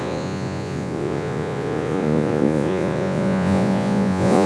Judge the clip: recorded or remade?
remade